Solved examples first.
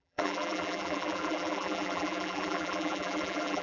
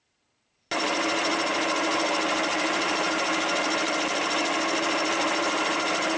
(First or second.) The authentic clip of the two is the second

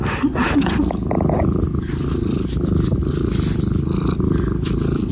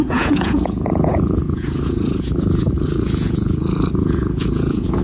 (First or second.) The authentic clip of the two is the first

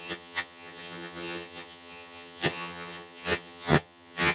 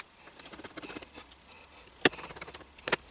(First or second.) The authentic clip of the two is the second